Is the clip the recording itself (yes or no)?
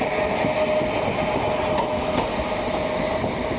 yes